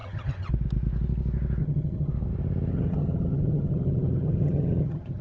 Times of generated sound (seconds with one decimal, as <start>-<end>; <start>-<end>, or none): 0.0-0.5; 1.6-2.1; 2.7-5.2